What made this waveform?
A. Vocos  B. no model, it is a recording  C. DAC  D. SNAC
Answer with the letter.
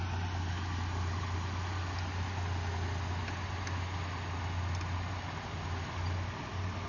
B